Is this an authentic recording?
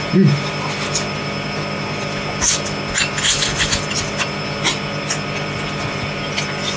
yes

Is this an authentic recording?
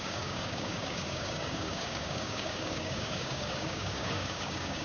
no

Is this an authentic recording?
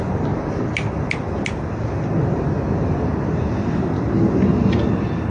yes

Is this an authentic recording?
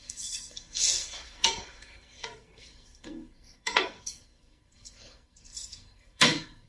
no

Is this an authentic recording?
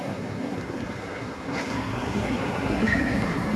no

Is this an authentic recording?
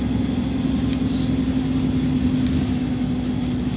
yes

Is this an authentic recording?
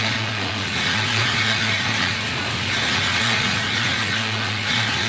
no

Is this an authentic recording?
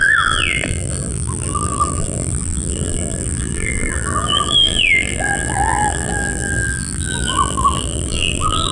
no